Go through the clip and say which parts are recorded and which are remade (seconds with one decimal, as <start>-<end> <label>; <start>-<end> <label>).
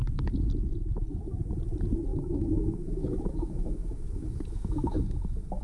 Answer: 0.0-2.1 recorded; 2.1-5.6 remade